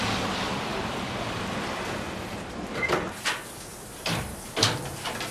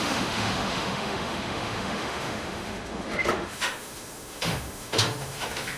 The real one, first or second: first